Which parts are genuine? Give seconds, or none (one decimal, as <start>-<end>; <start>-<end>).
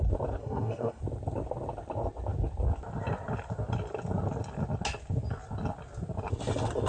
0.0-0.4; 1.0-6.9